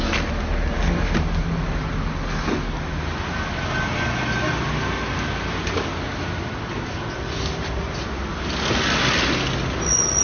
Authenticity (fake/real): real